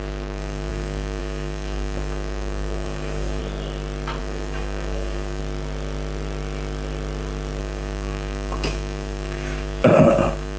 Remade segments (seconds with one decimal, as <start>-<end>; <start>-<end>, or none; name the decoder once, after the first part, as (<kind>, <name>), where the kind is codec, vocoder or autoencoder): 0.0-3.4 (codec, DAC); 4.2-5.4; 7.6-10.6